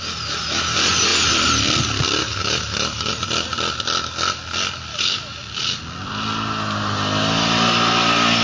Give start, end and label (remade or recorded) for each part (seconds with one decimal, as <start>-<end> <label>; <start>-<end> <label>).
0.0-2.2 recorded; 2.2-3.1 remade; 3.1-4.9 recorded; 4.9-5.8 remade; 5.8-8.4 recorded